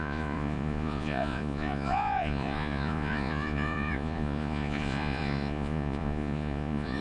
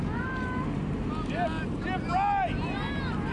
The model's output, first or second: first